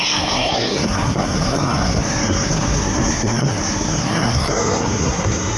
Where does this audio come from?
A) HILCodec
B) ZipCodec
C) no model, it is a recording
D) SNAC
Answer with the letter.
D